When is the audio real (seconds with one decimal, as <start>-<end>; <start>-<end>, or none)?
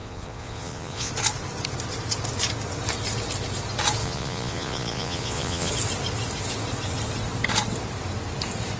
1.1-4.0; 5.7-8.8